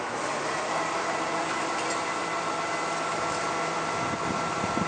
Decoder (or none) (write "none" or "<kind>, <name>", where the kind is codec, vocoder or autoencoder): none